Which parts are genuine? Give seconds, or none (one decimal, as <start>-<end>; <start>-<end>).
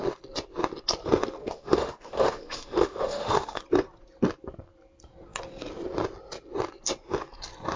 0.0-1.4; 3.6-7.8